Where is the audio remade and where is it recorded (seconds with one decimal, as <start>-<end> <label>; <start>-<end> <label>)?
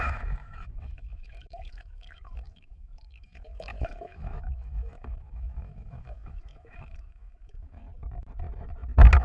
0.0-7.8 remade; 7.8-9.2 recorded